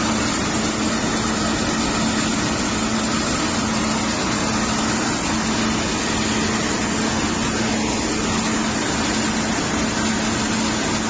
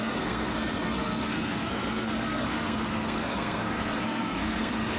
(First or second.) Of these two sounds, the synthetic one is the second